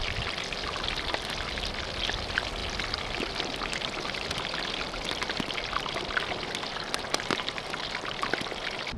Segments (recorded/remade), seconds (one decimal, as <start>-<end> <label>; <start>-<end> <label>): 0.0-9.0 recorded

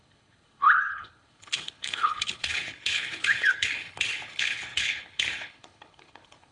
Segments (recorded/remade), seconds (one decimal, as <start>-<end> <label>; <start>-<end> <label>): 0.0-6.5 remade

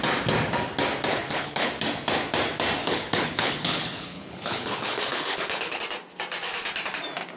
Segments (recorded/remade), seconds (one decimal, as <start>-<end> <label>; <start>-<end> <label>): 0.0-1.1 recorded; 1.1-1.7 remade; 1.7-2.8 recorded; 2.8-5.8 remade; 5.8-7.4 recorded

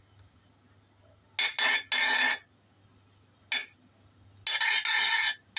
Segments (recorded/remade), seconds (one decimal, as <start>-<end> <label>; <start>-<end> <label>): 0.0-5.6 recorded

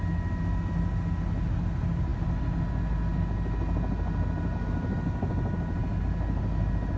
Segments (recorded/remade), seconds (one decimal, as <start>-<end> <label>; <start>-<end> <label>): 0.0-7.0 recorded

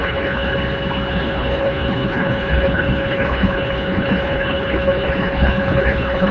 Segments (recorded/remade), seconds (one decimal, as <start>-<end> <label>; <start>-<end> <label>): 0.0-0.5 remade; 0.5-1.1 recorded; 1.1-6.3 remade